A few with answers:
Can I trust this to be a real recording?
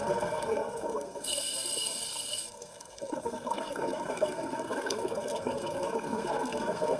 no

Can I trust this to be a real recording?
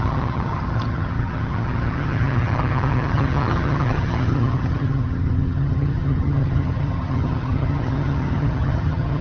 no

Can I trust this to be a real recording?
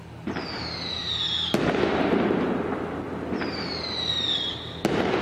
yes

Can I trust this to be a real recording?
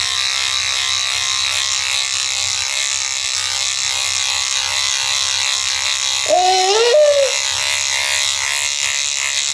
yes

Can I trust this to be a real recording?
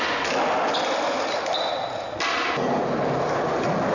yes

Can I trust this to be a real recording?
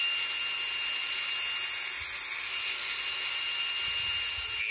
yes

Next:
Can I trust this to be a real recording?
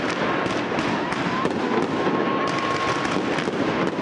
yes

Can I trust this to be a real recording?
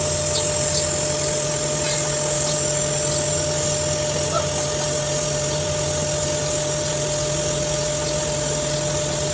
yes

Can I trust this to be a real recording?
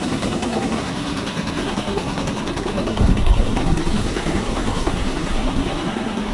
no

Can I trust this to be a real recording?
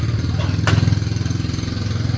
no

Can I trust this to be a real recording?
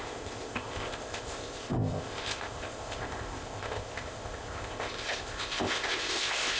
no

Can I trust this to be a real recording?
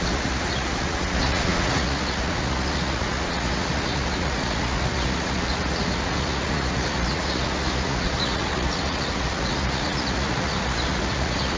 no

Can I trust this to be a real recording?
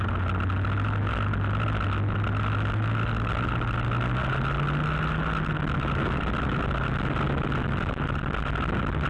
yes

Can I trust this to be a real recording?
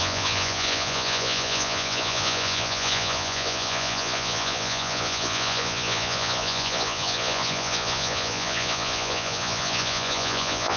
no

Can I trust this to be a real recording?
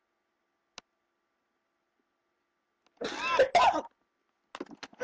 yes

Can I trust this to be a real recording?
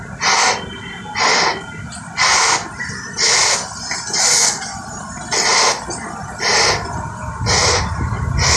yes